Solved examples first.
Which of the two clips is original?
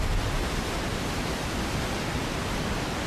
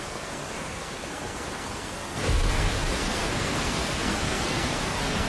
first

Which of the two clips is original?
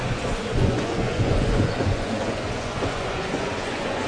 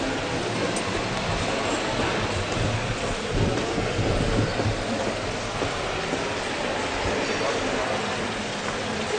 second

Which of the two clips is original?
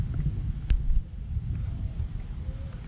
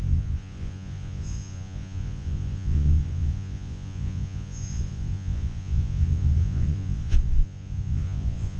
first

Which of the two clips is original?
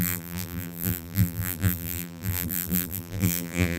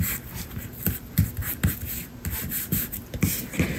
second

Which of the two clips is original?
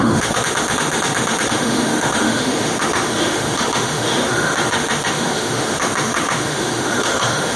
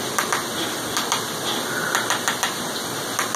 second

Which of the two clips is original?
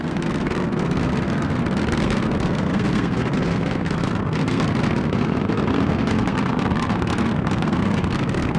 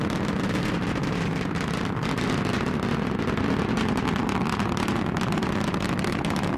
second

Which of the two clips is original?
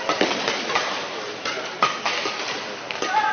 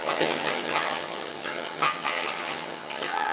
first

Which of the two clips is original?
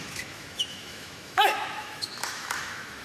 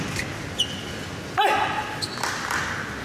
second